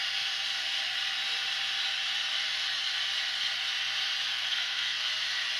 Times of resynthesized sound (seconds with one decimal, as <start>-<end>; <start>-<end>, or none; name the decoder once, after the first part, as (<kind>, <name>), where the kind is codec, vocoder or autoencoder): 4.3-5.1 (codec, SNAC)